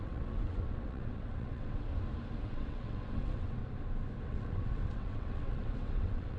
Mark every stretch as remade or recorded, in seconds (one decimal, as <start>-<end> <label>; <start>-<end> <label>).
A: 0.0-1.9 remade; 1.9-2.4 recorded; 2.4-3.6 remade; 3.6-4.2 recorded; 4.2-6.4 remade